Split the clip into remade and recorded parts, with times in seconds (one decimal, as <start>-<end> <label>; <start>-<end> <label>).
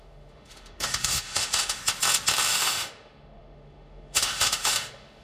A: 0.0-1.8 remade; 1.8-2.5 recorded; 2.5-5.2 remade